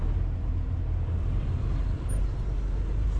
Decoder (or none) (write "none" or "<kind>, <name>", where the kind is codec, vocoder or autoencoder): none